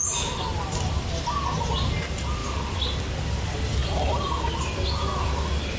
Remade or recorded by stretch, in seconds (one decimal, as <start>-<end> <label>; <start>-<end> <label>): 0.0-3.8 recorded; 3.8-4.4 remade; 4.4-5.8 recorded